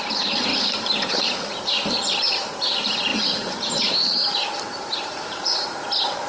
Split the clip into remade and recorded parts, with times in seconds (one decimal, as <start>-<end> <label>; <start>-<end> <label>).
0.0-0.5 recorded; 0.5-1.6 remade; 1.6-3.1 recorded; 3.1-5.8 remade; 5.8-6.3 recorded